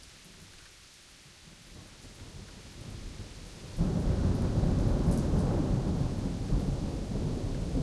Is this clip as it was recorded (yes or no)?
yes